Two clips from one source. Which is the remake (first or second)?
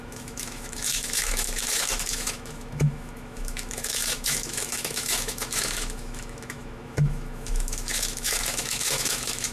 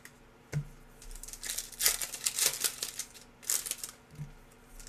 first